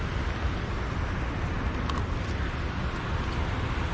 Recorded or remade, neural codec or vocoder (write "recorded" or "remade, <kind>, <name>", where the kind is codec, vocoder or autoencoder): recorded